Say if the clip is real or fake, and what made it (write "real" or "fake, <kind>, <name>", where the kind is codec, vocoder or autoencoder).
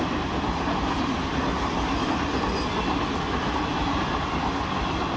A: real